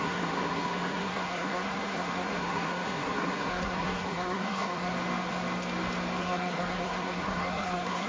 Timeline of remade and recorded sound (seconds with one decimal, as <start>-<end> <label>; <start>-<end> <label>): 0.0-4.9 remade; 4.9-6.2 recorded; 6.2-8.1 remade